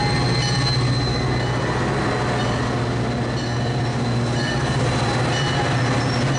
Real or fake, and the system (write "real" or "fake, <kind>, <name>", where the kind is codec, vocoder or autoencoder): real